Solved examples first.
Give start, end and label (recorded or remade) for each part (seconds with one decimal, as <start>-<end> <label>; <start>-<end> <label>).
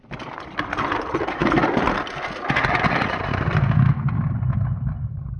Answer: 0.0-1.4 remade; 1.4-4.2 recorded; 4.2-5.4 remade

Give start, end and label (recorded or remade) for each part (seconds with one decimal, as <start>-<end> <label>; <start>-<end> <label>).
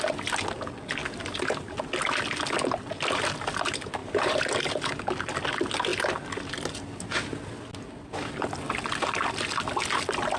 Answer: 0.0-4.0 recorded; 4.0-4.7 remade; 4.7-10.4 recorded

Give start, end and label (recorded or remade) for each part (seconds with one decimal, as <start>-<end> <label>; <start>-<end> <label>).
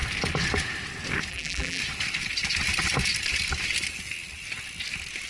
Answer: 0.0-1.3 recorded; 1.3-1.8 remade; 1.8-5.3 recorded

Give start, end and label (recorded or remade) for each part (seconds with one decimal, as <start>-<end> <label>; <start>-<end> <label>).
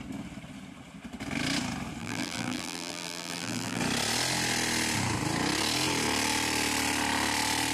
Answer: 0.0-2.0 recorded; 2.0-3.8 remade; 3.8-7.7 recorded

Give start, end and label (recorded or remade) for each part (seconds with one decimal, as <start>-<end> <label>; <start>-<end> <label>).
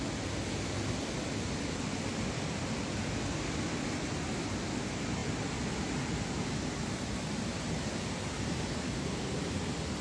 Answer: 0.0-10.0 recorded